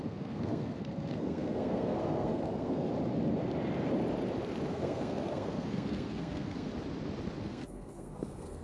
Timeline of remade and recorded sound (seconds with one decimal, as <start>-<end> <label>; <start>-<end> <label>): 0.0-2.9 remade; 2.9-4.7 recorded; 4.7-6.7 remade; 6.7-7.4 recorded; 7.4-8.6 remade